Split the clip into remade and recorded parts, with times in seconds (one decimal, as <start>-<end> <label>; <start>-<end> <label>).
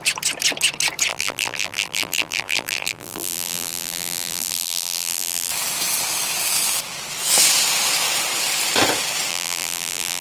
0.0-1.1 recorded; 1.1-5.5 remade; 5.5-9.3 recorded; 9.3-10.2 remade